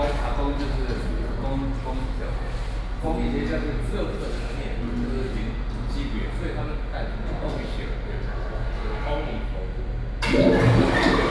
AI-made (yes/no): no